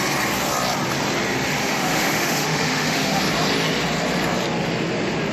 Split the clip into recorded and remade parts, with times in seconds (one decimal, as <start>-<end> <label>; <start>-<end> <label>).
0.0-1.6 recorded; 1.6-3.2 remade; 3.2-5.3 recorded